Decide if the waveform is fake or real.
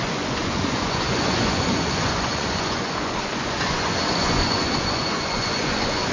fake